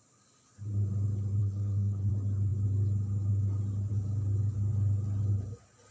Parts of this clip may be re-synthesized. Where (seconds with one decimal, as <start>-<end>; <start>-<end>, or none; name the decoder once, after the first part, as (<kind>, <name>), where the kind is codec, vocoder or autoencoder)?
1.4-2.1 (codec, SNAC)